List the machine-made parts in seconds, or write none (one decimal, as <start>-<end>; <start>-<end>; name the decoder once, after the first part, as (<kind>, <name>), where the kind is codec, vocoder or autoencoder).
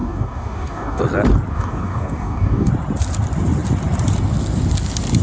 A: 0.0-1.0 (codec, DAC); 1.5-2.7